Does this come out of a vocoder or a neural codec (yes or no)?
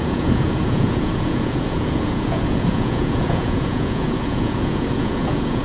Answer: yes